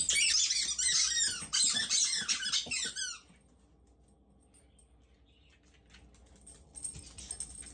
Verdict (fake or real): real